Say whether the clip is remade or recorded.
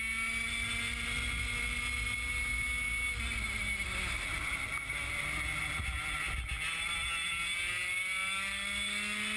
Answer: recorded